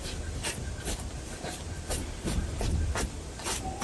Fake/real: real